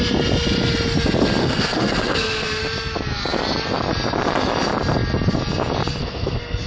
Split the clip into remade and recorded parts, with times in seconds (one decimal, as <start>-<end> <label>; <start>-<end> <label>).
0.0-1.4 recorded; 1.4-2.6 remade; 2.6-6.0 recorded; 6.0-6.7 remade